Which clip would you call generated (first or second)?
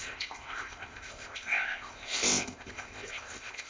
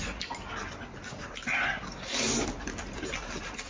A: first